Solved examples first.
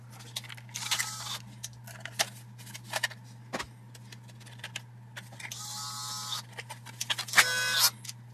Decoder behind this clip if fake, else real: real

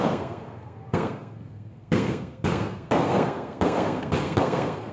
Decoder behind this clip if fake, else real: fake, codec, SNAC